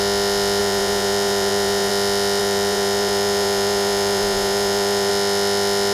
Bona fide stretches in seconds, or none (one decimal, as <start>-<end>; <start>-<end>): 0.0-0.6; 1.9-2.4; 5.1-5.9